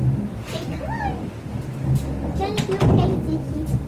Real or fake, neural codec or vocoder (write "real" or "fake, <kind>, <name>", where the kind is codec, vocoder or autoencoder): real